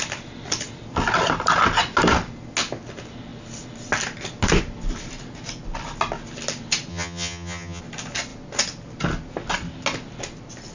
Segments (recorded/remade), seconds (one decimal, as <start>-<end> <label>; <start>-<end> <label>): 0.0-6.9 recorded; 6.9-7.8 remade; 7.8-10.7 recorded